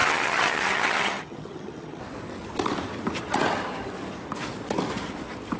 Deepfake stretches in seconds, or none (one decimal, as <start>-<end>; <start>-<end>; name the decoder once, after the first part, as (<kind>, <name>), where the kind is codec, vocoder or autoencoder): 0.0-2.0 (vocoder, HiFi-GAN)

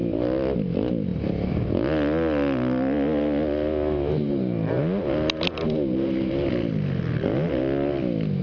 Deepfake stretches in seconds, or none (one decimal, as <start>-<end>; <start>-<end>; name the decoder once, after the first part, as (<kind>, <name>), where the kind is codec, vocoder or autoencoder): none

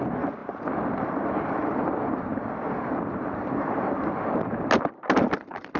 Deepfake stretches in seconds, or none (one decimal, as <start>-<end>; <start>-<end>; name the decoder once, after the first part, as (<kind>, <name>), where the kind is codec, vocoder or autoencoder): none

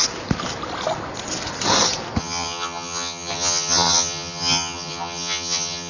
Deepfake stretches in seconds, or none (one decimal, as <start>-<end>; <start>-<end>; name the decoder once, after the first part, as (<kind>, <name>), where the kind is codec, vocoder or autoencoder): 2.2-5.9 (vocoder, HiFi-GAN)

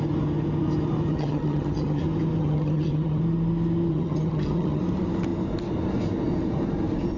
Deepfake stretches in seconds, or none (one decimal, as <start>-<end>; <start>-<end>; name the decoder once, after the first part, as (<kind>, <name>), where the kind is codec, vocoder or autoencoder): 1.1-2.0 (vocoder, HiFi-GAN); 2.4-3.2; 3.9-4.8

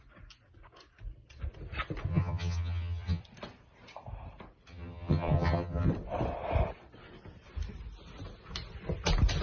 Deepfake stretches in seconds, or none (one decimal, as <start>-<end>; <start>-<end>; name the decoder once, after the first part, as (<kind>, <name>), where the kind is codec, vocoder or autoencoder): 2.1-3.2 (vocoder, HiFi-GAN); 4.7-5.9

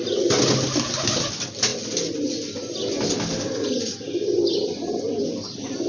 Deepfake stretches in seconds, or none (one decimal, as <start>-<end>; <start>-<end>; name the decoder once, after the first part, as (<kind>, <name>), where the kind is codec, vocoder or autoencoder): none

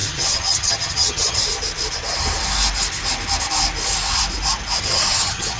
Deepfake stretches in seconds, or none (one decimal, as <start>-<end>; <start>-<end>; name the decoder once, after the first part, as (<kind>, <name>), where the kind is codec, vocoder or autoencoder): 0.0-1.4 (vocoder, HiFi-GAN); 4.8-5.6